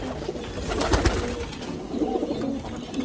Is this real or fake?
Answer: real